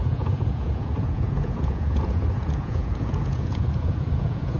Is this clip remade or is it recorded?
remade